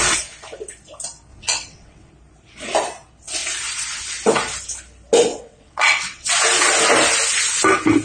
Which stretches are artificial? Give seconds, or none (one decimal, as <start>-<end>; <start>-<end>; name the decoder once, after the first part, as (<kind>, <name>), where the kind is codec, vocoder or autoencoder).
1.3-2.1 (vocoder, WaveNeXt); 5.3-6.3